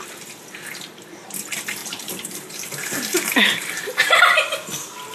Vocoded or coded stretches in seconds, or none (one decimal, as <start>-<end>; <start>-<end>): 1.8-4.2